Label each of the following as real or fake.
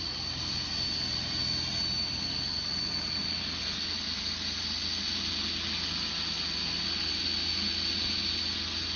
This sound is real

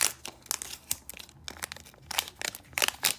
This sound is real